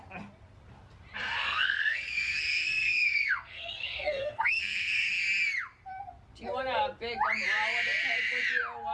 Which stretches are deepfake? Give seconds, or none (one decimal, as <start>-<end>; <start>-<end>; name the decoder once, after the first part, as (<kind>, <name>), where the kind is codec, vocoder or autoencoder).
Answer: 1.4-5.1 (codec, SNAC)